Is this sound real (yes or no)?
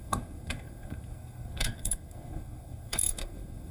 no